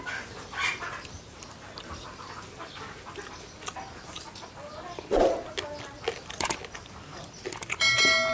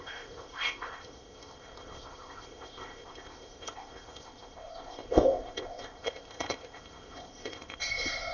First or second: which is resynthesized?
second